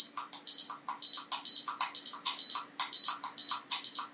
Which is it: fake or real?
real